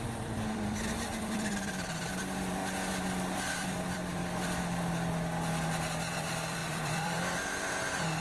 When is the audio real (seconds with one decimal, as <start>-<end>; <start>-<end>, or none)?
2.6-3.3; 4.2-6.1